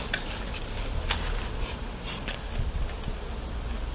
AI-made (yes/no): no